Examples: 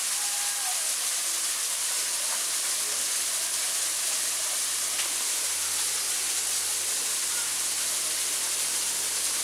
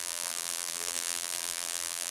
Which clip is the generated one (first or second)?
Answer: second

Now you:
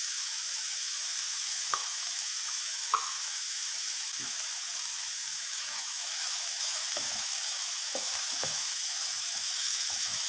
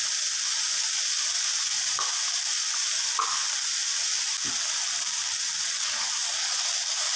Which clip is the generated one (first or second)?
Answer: first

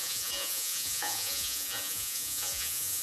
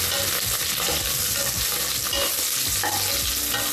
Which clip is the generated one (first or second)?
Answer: first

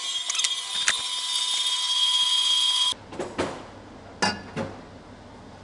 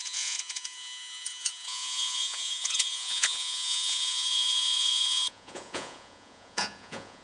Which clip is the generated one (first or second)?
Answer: second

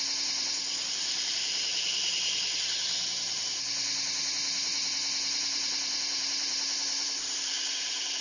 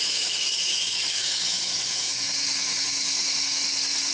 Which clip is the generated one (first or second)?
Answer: second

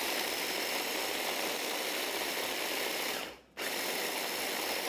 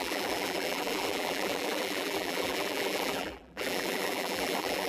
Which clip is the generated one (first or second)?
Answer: second